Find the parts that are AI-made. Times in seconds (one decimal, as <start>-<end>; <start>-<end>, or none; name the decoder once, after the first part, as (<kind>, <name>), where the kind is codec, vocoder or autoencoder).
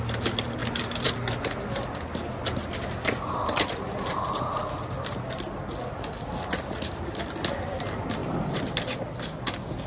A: 0.6-1.1 (vocoder, BigVGAN v2); 8.2-8.8